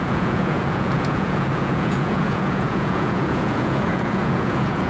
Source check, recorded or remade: remade